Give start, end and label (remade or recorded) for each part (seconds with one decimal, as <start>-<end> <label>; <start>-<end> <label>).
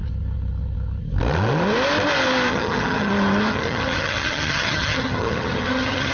0.0-2.5 recorded; 2.5-3.1 remade; 3.1-3.5 recorded; 3.5-6.1 remade